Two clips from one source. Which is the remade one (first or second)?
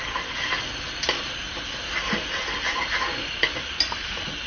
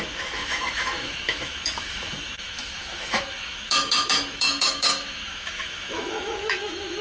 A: second